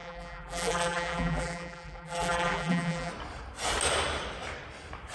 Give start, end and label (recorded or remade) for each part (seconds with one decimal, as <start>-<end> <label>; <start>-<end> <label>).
0.0-3.1 remade; 3.1-5.1 recorded